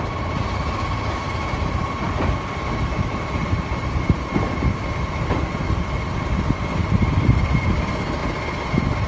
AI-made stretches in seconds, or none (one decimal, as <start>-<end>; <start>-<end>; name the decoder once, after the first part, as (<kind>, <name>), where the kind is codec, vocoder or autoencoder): 0.0-9.1 (vocoder, BigVGAN v2)